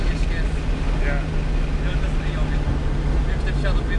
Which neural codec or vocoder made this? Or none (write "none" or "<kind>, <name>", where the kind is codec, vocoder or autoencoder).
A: none